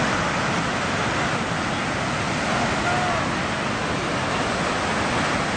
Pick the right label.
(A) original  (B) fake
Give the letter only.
A